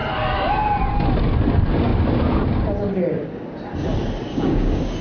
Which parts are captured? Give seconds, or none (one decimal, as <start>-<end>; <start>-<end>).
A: 0.0-4.3